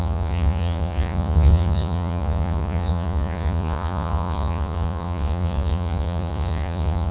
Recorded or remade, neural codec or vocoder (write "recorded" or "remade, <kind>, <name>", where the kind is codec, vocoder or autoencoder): remade, vocoder, Vocos